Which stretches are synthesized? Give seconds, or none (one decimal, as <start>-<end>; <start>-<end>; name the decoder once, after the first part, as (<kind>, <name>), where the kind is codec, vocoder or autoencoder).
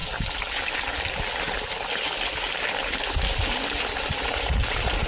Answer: none